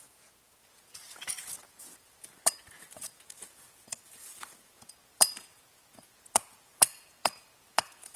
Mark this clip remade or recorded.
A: remade